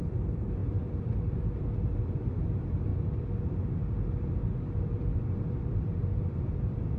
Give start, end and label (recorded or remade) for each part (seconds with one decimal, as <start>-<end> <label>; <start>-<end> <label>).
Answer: 0.0-0.6 recorded; 0.6-1.3 remade; 1.3-2.9 recorded; 2.9-3.8 remade; 3.8-4.4 recorded; 4.4-7.0 remade